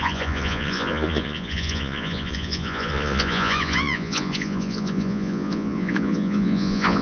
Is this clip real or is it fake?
fake